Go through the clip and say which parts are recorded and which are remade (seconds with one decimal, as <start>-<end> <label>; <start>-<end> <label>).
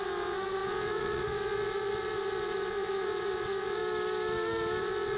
0.0-3.8 remade; 3.8-4.8 recorded; 4.8-5.2 remade